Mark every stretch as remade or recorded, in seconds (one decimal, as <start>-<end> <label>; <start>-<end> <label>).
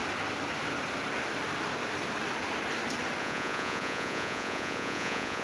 0.0-3.2 recorded; 3.2-5.4 remade